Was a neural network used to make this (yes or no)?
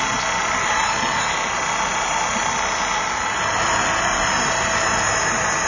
no